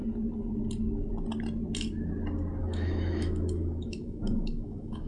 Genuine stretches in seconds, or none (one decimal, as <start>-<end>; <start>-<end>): 0.0-2.6